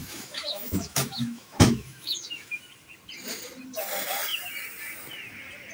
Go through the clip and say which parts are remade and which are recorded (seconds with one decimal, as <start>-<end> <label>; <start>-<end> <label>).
0.0-2.6 remade; 2.6-5.7 recorded

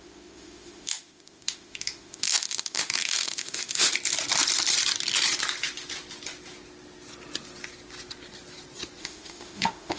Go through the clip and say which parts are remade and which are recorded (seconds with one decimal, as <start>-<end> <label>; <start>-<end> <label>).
0.0-3.9 remade; 3.9-9.0 recorded; 9.0-10.0 remade

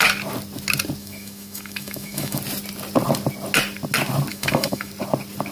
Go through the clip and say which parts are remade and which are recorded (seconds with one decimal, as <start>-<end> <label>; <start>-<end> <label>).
0.0-1.0 recorded; 1.0-2.4 remade; 2.4-4.3 recorded; 4.3-4.9 remade; 4.9-5.5 recorded

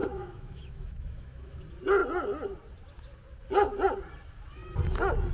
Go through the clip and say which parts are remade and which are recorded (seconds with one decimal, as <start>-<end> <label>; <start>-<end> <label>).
0.0-1.6 remade; 1.6-5.3 recorded

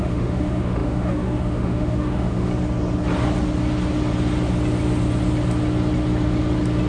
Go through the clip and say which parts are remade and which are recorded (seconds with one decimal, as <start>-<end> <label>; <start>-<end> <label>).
0.0-2.5 remade; 2.5-6.9 recorded

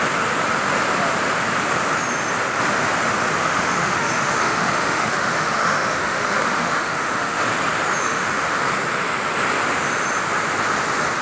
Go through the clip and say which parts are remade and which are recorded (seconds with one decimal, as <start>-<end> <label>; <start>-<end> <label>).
0.0-3.4 recorded; 3.4-7.4 remade; 7.4-8.0 recorded; 8.0-8.6 remade; 8.6-11.2 recorded

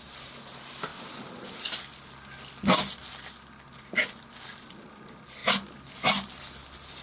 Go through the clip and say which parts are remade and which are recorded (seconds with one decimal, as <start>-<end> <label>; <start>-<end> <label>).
0.0-7.0 recorded